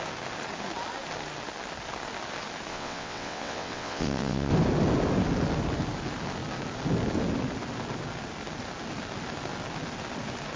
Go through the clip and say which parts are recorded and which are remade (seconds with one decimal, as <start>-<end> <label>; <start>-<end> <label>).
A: 0.0-2.7 recorded; 2.7-4.5 remade; 4.5-10.6 recorded

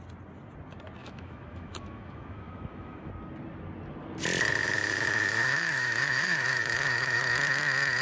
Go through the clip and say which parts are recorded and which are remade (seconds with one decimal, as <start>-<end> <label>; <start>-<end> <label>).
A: 0.0-1.0 recorded; 1.0-3.1 remade; 3.1-4.6 recorded; 4.6-7.2 remade; 7.2-8.0 recorded

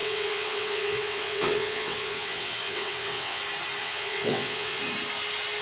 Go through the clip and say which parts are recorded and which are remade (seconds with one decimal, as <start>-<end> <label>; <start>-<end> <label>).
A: 0.0-3.4 remade; 3.4-3.8 recorded; 3.8-4.8 remade; 4.8-5.6 recorded

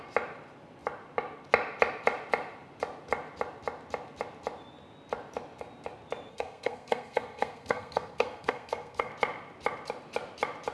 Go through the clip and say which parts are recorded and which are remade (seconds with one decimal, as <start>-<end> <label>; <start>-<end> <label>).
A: 0.0-6.3 recorded; 6.3-9.1 remade; 9.1-10.7 recorded